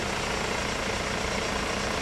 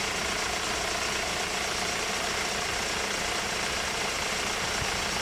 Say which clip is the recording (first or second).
first